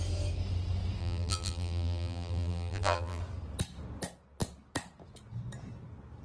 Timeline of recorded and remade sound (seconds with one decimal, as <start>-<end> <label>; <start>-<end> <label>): 0.0-1.0 recorded; 1.0-3.2 remade; 3.2-6.2 recorded